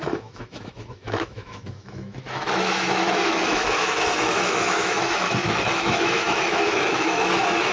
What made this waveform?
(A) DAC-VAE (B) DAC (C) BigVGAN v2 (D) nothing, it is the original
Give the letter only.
A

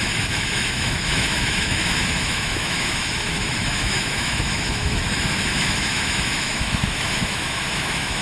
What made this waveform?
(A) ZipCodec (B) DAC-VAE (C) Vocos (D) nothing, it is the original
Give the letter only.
B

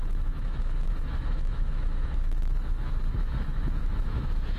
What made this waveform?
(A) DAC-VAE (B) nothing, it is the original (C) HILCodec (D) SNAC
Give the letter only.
A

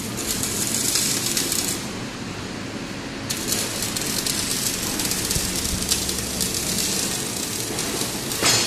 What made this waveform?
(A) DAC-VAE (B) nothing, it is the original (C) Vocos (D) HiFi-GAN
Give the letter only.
B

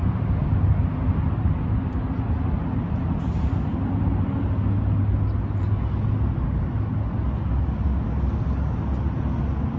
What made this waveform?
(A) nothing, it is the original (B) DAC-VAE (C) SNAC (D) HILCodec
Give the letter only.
A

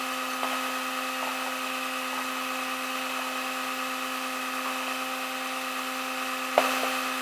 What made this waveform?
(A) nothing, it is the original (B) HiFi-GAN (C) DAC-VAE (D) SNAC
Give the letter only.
A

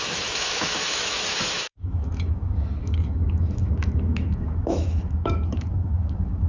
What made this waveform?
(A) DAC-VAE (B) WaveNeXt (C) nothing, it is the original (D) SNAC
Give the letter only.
A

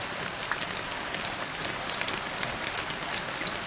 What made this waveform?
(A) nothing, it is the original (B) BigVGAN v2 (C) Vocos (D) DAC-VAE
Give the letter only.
A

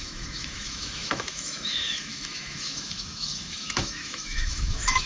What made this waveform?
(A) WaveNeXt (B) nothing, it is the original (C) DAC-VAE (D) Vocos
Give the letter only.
C